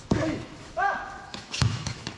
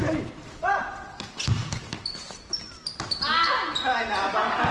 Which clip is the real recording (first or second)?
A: second